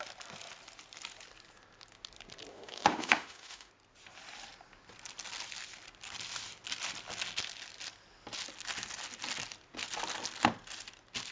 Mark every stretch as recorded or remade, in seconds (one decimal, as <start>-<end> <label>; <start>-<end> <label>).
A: 0.0-2.5 recorded; 2.5-3.7 remade; 3.7-11.3 recorded

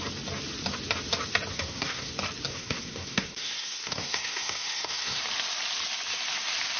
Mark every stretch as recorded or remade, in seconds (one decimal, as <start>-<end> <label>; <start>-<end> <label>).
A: 0.0-1.5 recorded; 1.5-2.1 remade; 2.1-2.5 recorded; 2.5-5.2 remade; 5.2-6.8 recorded

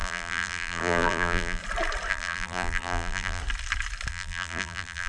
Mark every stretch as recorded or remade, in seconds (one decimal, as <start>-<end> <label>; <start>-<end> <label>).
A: 0.0-1.6 remade; 1.6-2.1 recorded; 2.1-3.4 remade; 3.4-4.1 recorded; 4.1-5.1 remade

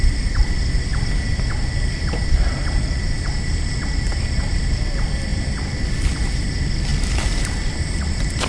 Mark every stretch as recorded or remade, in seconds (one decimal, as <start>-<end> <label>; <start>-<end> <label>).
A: 0.0-8.5 recorded

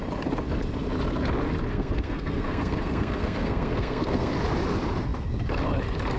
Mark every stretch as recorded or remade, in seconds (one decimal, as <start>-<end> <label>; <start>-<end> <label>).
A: 0.0-1.7 recorded; 1.7-4.3 remade; 4.3-6.2 recorded

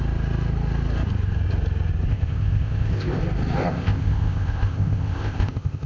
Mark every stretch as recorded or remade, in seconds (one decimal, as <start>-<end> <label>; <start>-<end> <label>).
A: 0.0-2.1 recorded; 2.1-3.2 remade; 3.2-3.6 recorded; 3.6-5.9 remade

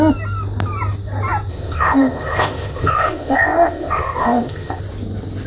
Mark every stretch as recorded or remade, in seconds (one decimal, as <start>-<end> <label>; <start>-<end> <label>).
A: 0.0-1.5 recorded; 1.5-4.8 remade; 4.8-5.5 recorded

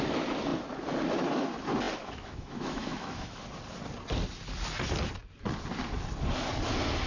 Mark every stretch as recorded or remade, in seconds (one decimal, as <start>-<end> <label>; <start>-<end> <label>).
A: 0.0-2.0 recorded; 2.0-3.4 remade; 3.4-7.1 recorded